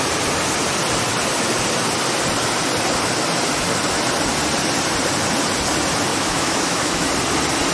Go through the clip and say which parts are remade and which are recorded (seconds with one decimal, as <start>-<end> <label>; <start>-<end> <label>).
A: 0.0-6.1 recorded; 6.1-7.1 remade; 7.1-7.7 recorded